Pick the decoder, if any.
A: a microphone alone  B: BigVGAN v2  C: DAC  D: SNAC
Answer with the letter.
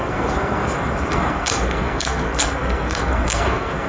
D